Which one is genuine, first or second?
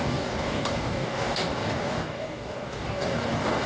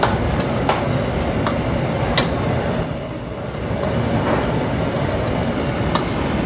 second